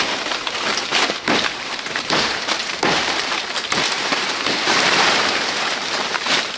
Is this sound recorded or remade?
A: remade